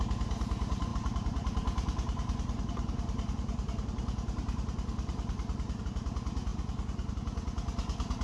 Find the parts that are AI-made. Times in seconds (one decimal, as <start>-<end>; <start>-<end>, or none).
0.9-5.8